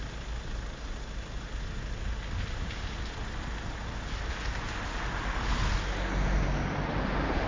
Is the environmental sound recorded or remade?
recorded